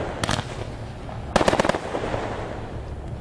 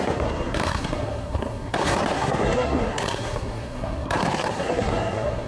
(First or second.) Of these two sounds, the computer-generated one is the second